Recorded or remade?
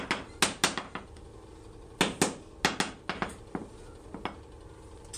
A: recorded